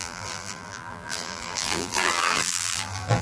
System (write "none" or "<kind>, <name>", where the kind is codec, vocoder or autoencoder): vocoder, BigVGAN v2